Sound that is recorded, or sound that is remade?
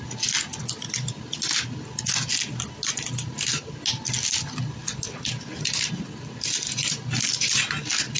recorded